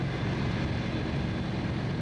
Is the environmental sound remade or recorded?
recorded